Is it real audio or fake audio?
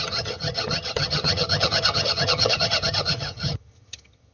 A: fake